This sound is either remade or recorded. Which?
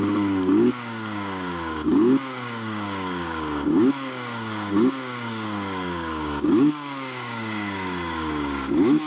remade